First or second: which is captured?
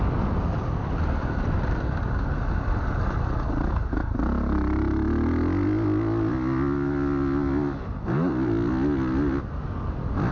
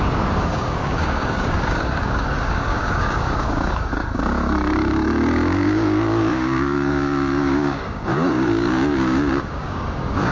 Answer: first